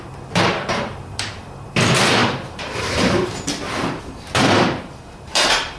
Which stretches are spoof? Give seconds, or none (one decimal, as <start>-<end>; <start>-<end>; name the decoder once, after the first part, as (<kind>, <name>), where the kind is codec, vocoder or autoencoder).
0.0-5.8 (vocoder, BigVGAN v2)